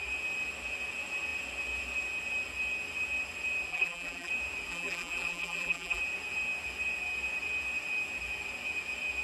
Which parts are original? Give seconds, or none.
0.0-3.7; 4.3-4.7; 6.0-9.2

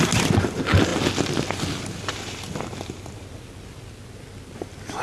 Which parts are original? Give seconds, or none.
0.0-5.0

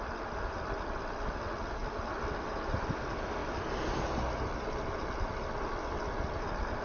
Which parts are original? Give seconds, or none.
0.0-6.8

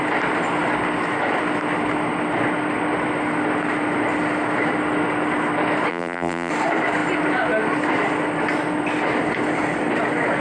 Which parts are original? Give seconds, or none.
0.0-5.9; 6.5-10.4

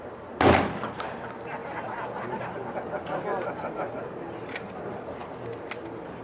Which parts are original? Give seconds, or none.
0.0-6.2